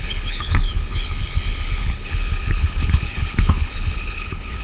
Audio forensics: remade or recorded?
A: remade